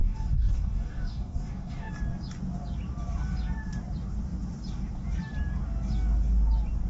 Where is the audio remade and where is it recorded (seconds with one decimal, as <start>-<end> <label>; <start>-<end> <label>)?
0.0-1.9 remade; 1.9-6.9 recorded